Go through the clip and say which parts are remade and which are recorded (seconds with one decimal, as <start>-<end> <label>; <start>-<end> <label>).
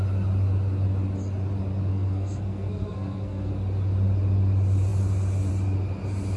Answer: 0.0-1.9 recorded; 1.9-3.5 remade; 3.5-6.4 recorded